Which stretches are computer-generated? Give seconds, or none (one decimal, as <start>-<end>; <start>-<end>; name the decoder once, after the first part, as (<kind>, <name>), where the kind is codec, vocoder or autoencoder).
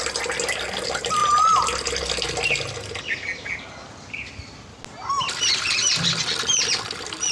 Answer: none